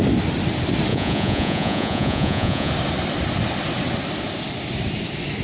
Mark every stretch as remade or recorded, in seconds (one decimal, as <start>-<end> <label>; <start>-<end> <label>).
0.0-0.9 recorded; 0.9-2.7 remade; 2.7-5.4 recorded